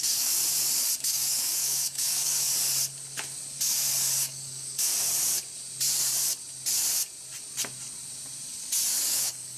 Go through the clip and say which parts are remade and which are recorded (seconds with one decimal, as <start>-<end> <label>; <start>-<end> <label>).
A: 0.0-0.4 remade; 0.4-1.0 recorded; 1.0-2.5 remade; 2.5-4.2 recorded; 4.2-4.9 remade; 4.9-9.1 recorded; 9.1-9.6 remade